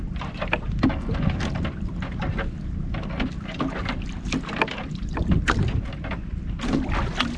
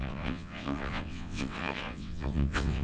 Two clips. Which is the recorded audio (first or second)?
first